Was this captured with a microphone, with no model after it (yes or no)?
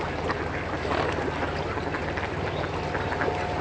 yes